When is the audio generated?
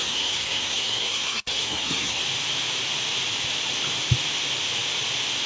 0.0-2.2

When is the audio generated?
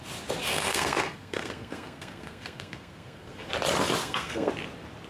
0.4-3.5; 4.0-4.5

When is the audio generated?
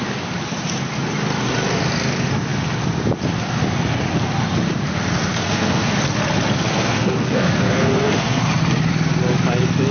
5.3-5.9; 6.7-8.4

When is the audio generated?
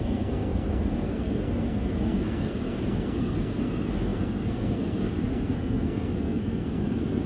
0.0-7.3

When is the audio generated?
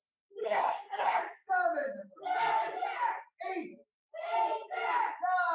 0.4-1.2